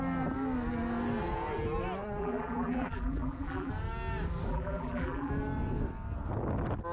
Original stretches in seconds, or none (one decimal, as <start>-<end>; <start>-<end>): 0.0-2.2; 3.7-4.5; 5.3-6.9